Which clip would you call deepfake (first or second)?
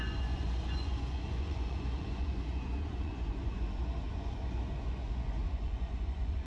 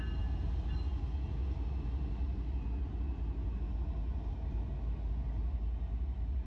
first